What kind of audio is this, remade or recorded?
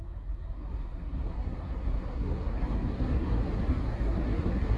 remade